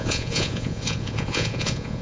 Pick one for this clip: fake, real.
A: fake